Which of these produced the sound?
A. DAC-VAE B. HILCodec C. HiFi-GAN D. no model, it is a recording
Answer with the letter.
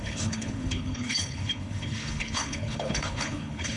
B